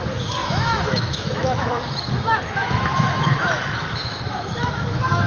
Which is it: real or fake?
fake